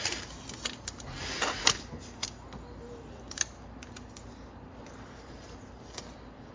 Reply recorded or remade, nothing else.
recorded